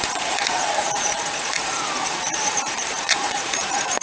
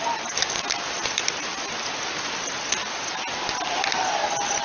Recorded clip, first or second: second